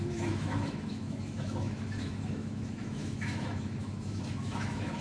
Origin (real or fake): fake